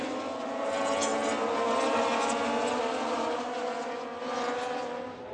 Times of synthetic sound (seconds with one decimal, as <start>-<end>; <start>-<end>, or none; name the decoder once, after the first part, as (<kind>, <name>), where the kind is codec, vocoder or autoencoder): none